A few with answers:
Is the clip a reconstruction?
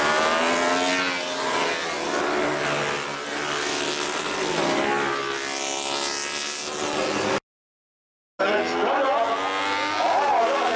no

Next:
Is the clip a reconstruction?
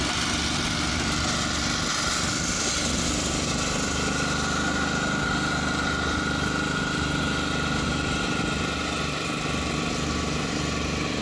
no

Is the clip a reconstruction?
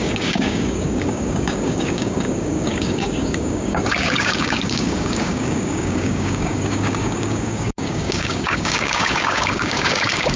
yes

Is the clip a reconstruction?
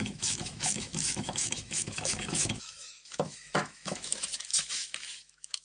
yes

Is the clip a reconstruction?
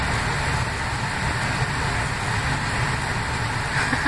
no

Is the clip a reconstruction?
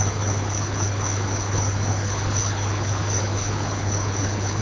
yes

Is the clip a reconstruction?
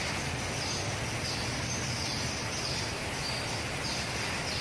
yes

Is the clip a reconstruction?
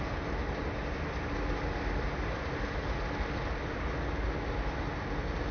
no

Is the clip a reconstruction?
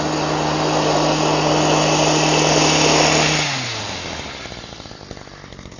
no